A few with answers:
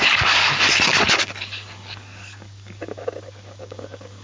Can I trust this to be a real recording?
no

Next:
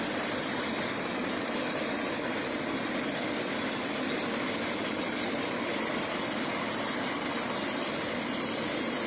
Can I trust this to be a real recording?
yes